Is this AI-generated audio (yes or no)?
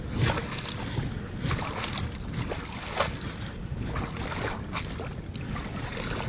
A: no